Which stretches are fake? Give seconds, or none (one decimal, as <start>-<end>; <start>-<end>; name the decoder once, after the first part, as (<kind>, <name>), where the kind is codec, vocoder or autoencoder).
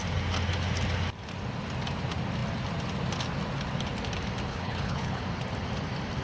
4.5-5.2 (codec, HILCodec)